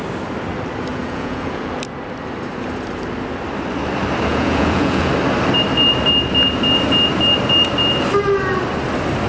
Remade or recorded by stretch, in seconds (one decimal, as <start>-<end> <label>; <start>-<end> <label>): 0.0-0.9 recorded; 0.9-1.7 remade; 1.7-4.3 recorded; 4.3-5.1 remade; 5.1-9.3 recorded